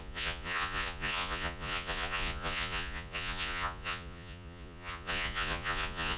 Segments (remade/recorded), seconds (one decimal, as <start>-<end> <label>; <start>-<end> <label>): 0.0-6.2 remade